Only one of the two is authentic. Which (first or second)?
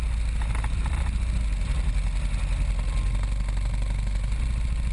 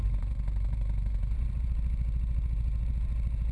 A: first